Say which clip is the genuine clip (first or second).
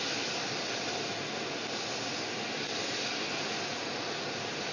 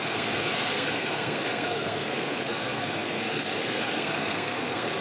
first